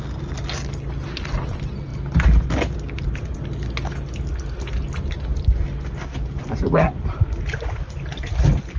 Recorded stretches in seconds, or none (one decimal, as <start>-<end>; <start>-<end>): 0.0-8.8